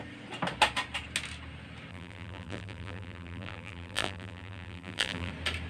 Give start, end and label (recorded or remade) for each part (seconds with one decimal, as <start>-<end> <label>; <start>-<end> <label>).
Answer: 0.0-1.9 recorded; 1.9-5.3 remade; 5.3-5.7 recorded